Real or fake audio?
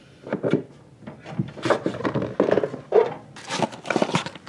real